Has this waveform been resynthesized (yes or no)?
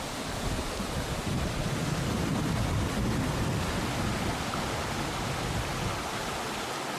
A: no